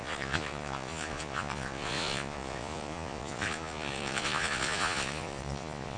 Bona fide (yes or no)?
no